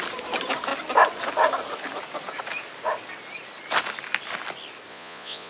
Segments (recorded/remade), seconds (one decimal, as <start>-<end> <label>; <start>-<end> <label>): 0.0-4.9 recorded; 4.9-5.5 remade